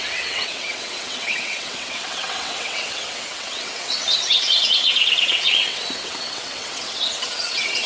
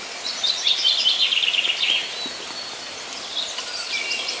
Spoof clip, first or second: first